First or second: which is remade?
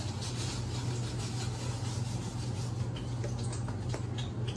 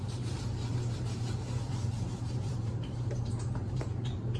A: second